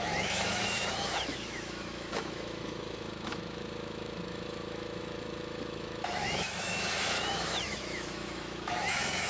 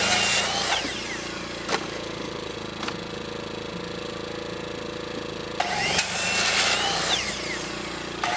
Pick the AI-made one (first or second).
first